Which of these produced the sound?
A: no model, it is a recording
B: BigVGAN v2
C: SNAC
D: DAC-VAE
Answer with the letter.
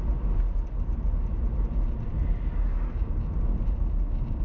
A